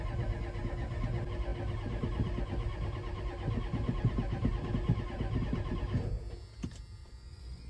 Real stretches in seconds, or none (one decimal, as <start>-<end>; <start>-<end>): 0.0-7.0

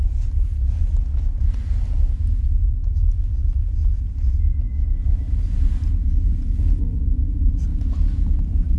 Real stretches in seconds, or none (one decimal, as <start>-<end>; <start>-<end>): 0.0-8.8

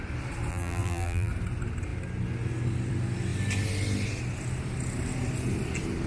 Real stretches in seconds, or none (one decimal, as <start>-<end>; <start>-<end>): 0.0-0.5; 1.3-6.1

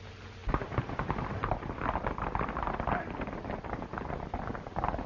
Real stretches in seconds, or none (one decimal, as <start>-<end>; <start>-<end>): 0.0-5.1

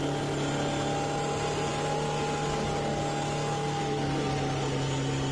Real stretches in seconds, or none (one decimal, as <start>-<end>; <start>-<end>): 0.0-5.3

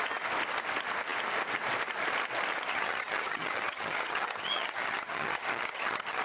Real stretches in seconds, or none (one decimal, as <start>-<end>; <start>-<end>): 0.0-2.7

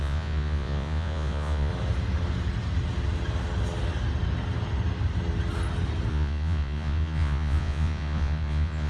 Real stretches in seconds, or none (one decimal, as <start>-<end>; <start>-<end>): 1.7-6.1